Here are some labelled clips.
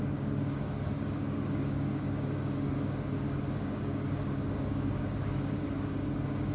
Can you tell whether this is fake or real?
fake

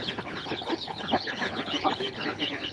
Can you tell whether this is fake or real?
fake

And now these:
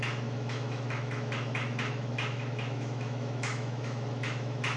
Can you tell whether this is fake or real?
fake